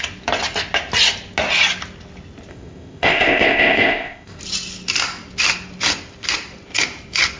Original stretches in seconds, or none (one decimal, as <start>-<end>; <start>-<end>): 0.0-2.5; 4.4-7.4